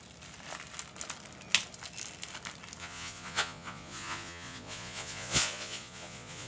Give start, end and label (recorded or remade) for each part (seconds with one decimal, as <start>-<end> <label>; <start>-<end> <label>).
0.0-2.8 recorded; 2.8-6.5 remade